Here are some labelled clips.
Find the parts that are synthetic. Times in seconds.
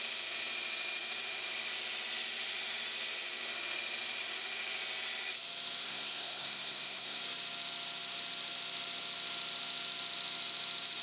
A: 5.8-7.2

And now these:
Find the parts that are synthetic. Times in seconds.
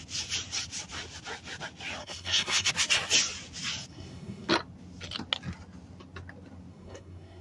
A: 2.0-2.7; 3.9-4.5; 6.7-7.4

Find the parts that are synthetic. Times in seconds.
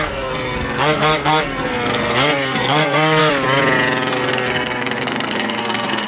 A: 0.0-3.2; 4.1-6.1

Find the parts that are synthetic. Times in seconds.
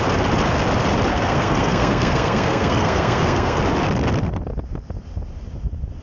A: 1.1-3.6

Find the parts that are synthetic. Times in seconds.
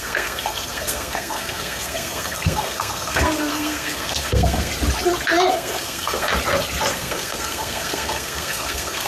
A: 0.0-4.7; 5.5-6.3; 6.9-9.1